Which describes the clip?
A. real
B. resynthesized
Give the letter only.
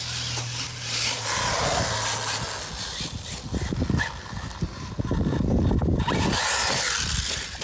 A